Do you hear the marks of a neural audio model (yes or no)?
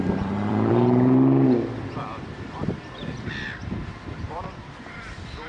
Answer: yes